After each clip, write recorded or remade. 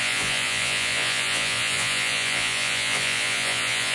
remade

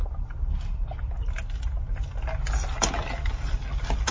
recorded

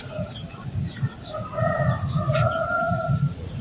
remade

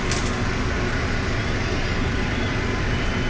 recorded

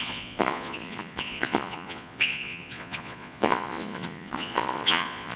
remade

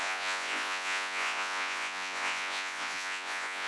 remade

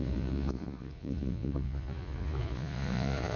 remade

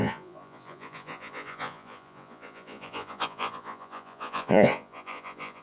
remade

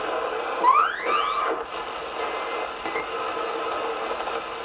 recorded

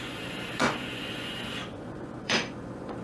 remade